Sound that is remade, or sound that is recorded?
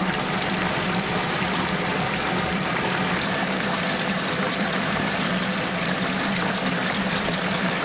remade